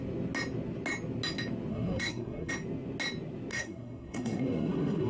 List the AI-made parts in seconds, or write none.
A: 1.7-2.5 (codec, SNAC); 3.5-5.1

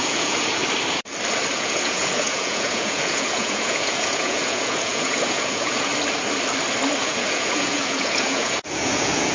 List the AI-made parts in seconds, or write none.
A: 0.0-0.6 (vocoder, Vocos); 1.6-5.9; 7.0-9.3

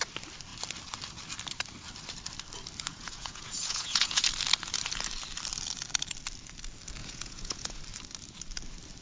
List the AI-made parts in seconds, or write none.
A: 2.9-4.2 (vocoder, Vocos); 7.0-7.8